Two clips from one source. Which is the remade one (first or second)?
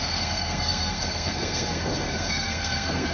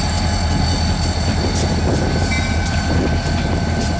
first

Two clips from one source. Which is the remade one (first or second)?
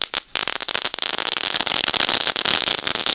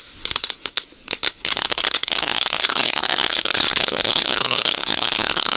second